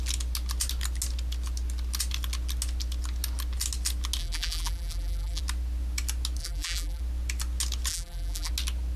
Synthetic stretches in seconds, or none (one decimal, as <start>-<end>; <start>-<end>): 4.2-5.4; 6.4-7.0; 7.9-8.5